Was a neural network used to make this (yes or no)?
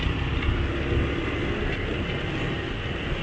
no